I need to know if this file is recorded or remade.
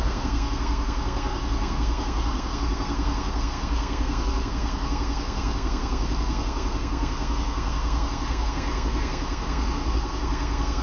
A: remade